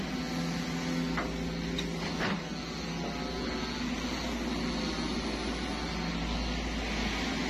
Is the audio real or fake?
real